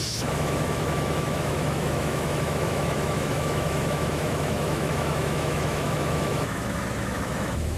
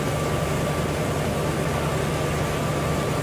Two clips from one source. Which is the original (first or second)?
second